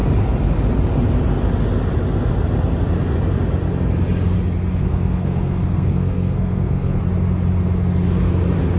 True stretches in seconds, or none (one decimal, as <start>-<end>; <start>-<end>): 0.0-4.7; 7.0-8.8